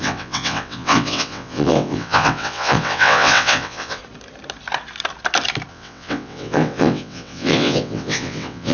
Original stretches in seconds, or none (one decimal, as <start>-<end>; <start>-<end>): 4.0-5.7